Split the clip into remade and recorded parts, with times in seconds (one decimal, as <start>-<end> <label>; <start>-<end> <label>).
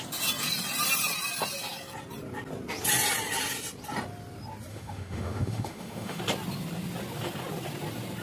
0.0-4.7 recorded; 4.7-6.2 remade; 6.2-8.2 recorded